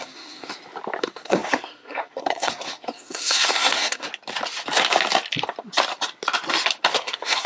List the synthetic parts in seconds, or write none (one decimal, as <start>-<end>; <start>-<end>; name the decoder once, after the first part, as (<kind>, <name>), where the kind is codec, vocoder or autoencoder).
0.0-0.5 (codec, SNAC); 1.0-4.1; 6.9-7.5